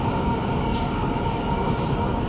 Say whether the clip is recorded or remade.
remade